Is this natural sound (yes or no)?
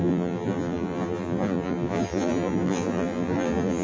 no